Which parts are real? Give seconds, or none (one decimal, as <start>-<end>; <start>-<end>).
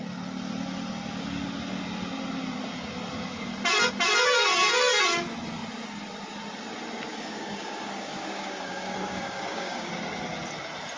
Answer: 0.0-7.1; 9.9-11.0